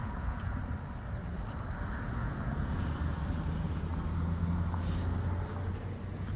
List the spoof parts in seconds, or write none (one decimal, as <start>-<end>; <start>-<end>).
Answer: 0.0-0.6; 2.2-2.9